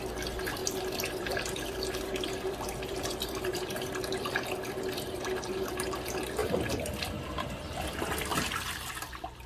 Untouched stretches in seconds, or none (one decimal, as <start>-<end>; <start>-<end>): 0.0-0.6; 5.3-6.4; 7.9-9.5